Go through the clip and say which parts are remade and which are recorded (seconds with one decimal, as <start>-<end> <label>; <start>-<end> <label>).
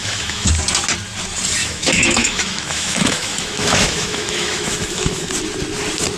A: 0.0-0.5 remade; 0.5-1.6 recorded; 1.6-5.3 remade; 5.3-6.2 recorded